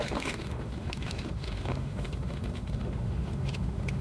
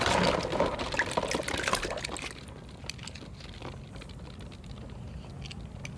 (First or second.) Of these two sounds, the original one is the second